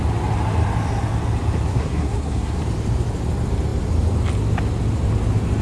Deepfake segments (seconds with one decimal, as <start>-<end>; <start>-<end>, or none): 1.7-2.6